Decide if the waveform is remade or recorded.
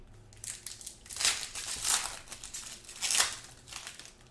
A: recorded